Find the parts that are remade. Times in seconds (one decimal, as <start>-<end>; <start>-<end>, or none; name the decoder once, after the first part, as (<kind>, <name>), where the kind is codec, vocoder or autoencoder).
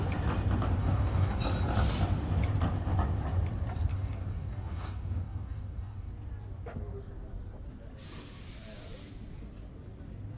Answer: 0.8-1.4 (codec, DAC); 3.9-6.1